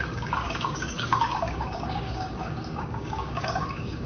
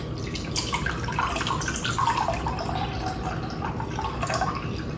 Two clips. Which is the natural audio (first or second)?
second